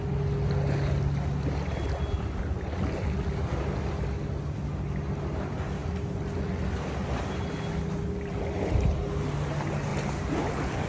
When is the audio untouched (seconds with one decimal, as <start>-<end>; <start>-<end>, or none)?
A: 0.0-10.9